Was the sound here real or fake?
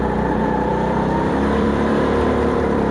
fake